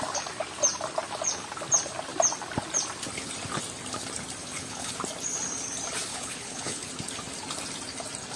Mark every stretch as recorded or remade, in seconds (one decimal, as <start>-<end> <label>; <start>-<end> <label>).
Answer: 0.0-4.4 recorded; 4.4-4.9 remade; 4.9-6.1 recorded; 6.1-6.9 remade; 6.9-8.4 recorded